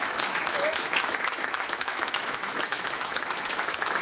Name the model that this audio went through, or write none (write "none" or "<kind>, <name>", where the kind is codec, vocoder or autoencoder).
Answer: autoencoder, DAC-VAE